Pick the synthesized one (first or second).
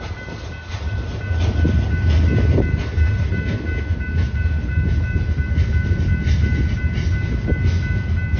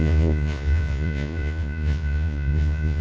second